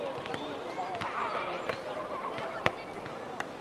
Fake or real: real